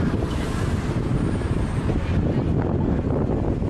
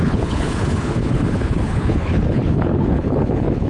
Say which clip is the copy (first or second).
second